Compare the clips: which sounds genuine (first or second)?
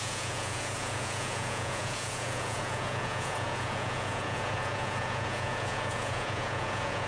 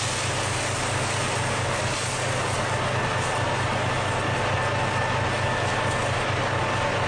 second